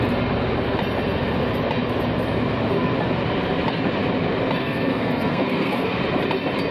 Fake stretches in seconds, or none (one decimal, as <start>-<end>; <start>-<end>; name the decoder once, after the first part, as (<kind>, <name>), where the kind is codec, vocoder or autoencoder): 4.6-6.0 (codec, SNAC)